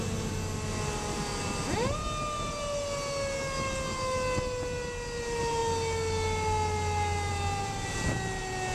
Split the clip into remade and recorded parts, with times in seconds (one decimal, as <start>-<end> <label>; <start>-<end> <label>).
0.0-8.7 recorded